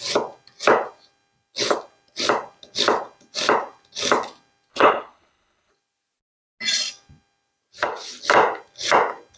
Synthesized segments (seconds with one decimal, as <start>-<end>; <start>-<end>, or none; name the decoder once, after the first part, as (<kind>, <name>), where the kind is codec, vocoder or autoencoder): 4.7-5.7 (codec, HILCodec)